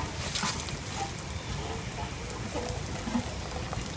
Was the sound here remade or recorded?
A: recorded